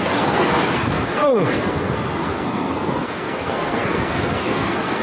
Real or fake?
fake